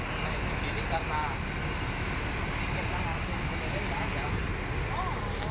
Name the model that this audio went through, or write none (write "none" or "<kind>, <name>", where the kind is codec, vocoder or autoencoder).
none